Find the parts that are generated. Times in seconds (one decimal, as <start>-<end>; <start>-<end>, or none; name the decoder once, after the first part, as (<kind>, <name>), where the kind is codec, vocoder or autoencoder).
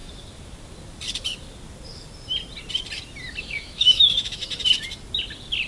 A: 3.4-4.4 (autoencoder, DAC-VAE)